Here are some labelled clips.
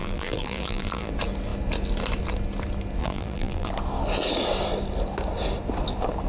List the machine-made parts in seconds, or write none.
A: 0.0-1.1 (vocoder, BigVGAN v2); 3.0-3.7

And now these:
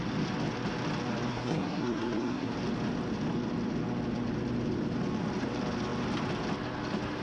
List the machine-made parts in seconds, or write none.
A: 1.3-2.5 (codec, SNAC)

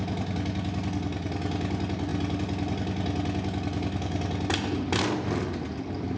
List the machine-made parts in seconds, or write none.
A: none

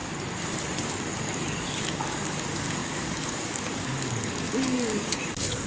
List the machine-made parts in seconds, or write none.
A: 0.9-5.7 (codec, DAC)

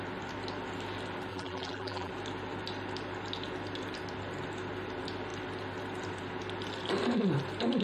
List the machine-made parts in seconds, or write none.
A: 1.3-2.1 (vocoder, BigVGAN v2)

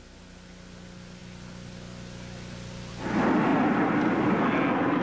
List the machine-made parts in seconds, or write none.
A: none